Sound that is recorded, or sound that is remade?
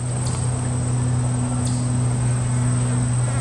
recorded